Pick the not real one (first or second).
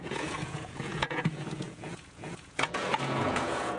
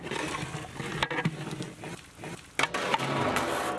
first